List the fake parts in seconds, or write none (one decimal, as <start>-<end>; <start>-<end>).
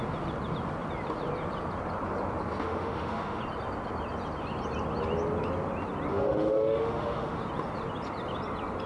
2.6-3.4; 6.1-7.4